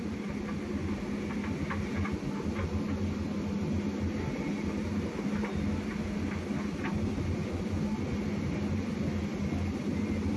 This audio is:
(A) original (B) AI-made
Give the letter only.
A